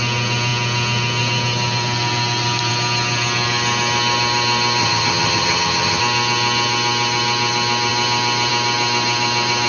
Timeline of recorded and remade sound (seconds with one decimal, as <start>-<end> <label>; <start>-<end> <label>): 0.0-4.8 recorded; 4.8-6.0 remade; 6.0-9.7 recorded